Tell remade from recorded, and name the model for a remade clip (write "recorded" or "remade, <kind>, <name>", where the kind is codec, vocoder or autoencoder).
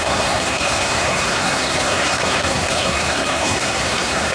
remade, codec, SNAC